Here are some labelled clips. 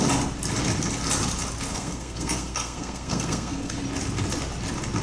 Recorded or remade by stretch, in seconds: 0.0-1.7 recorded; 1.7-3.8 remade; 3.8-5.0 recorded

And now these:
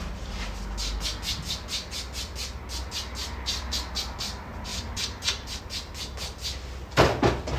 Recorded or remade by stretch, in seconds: 0.0-3.2 recorded; 3.2-3.8 remade; 3.8-4.7 recorded; 4.7-5.6 remade; 5.6-7.6 recorded

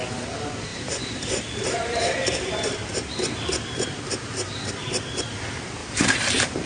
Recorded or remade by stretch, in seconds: 0.0-0.7 recorded; 0.7-4.7 remade; 4.7-5.8 recorded; 5.8-6.7 remade

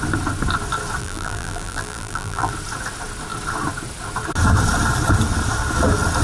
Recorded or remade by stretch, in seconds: 0.0-1.0 recorded; 1.0-2.5 remade; 2.5-6.2 recorded

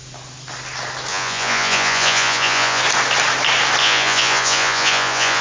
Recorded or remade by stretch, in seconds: 0.0-1.1 recorded; 1.1-2.8 remade; 2.8-3.8 recorded; 3.8-5.4 remade

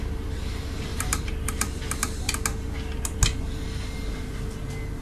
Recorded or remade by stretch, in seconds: 0.0-0.9 recorded; 0.9-2.0 remade; 2.0-5.0 recorded